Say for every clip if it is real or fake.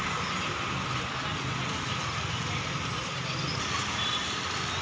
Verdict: real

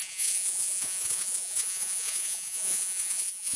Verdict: fake